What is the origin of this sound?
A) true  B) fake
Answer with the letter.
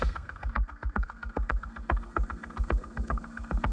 B